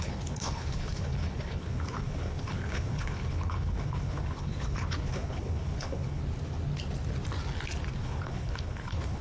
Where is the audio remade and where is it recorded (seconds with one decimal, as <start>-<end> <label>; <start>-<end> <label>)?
0.0-6.2 remade; 6.2-8.0 recorded; 8.0-9.2 remade